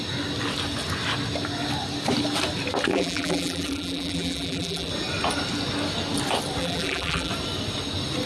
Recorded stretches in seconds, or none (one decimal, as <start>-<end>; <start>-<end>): 0.0-2.9; 4.9-6.6; 7.3-8.3